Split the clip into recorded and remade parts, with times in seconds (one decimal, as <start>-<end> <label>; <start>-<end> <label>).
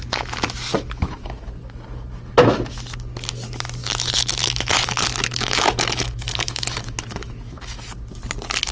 0.0-0.7 recorded; 0.7-1.5 remade; 1.5-3.8 recorded; 3.8-7.9 remade; 7.9-8.7 recorded